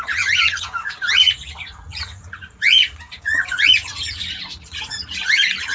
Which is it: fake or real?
fake